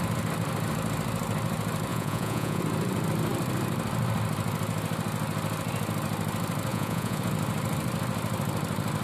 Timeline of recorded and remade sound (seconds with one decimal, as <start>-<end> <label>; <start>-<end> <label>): 0.0-1.9 recorded; 1.9-2.6 remade; 2.6-6.7 recorded; 6.7-7.2 remade; 7.2-9.0 recorded

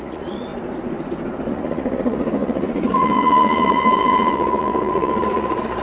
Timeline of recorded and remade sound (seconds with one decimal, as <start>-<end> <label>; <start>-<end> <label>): 0.0-0.5 remade; 0.5-1.5 recorded; 1.5-5.8 remade

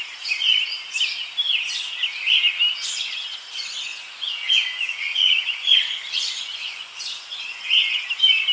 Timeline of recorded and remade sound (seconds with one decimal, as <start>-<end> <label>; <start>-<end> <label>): 0.0-3.0 recorded; 3.0-3.5 remade; 3.5-3.9 recorded; 3.9-8.0 remade; 8.0-8.5 recorded